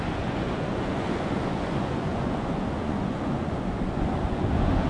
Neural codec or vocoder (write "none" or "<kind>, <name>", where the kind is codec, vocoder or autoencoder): vocoder, Vocos